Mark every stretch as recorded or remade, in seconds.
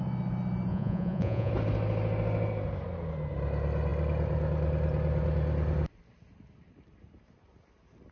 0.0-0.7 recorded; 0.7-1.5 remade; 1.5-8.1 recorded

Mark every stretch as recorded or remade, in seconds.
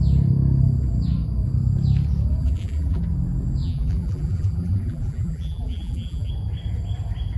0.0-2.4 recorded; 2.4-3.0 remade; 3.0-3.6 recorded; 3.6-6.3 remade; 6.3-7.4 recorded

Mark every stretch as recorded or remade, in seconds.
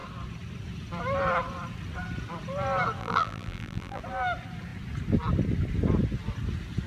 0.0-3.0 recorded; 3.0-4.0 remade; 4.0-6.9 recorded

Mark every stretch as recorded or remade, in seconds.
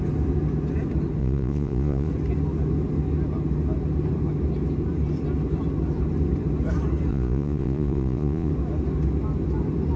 0.0-1.2 recorded; 1.2-2.1 remade; 2.1-7.1 recorded; 7.1-8.5 remade; 8.5-10.0 recorded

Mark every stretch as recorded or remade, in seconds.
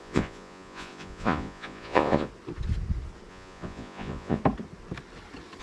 0.0-2.3 remade; 2.3-3.3 recorded; 3.3-4.4 remade; 4.4-5.6 recorded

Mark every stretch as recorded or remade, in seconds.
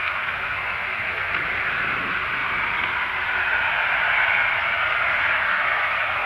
0.0-1.3 remade; 1.3-5.1 recorded; 5.1-6.3 remade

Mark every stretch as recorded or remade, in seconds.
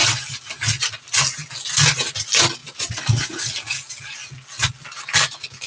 0.0-2.6 recorded; 2.6-3.5 remade; 3.5-5.7 recorded